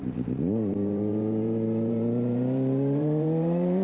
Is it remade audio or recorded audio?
remade